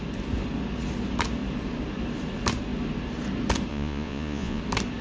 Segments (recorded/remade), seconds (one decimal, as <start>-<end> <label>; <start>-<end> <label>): 0.0-3.7 recorded; 3.7-4.6 remade; 4.6-5.0 recorded